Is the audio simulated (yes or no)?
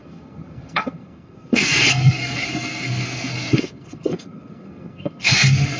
yes